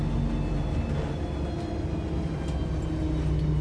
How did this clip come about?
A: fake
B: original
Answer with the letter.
B